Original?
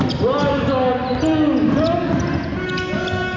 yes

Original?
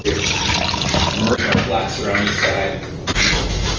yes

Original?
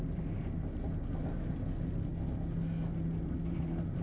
yes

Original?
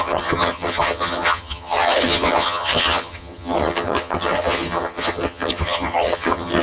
no